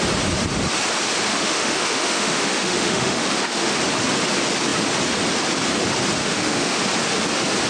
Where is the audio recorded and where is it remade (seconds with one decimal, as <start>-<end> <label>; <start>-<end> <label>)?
0.0-1.3 recorded; 1.3-3.8 remade; 3.8-6.2 recorded; 6.2-6.8 remade; 6.8-7.7 recorded

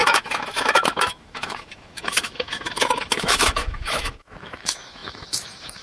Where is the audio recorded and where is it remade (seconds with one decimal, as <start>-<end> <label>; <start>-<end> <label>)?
0.0-5.8 remade

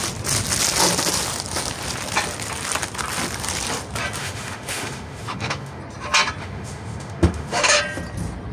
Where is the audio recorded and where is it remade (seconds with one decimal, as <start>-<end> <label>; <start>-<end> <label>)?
0.0-4.2 recorded; 4.2-5.8 remade; 5.8-6.4 recorded; 6.4-7.8 remade; 7.8-8.5 recorded

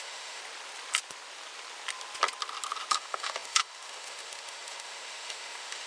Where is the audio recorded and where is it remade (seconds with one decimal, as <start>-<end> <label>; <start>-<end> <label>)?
0.0-0.4 remade; 0.4-2.9 recorded; 2.9-5.9 remade

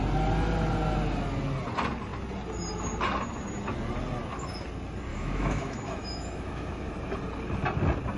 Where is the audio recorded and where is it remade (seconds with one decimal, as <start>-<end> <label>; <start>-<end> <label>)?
0.0-5.1 recorded; 5.1-6.9 remade; 6.9-8.2 recorded